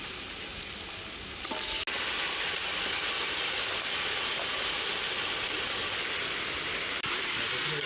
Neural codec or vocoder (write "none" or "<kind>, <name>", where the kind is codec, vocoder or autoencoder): none